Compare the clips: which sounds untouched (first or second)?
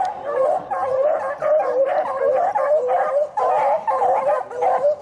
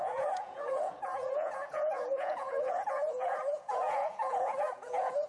first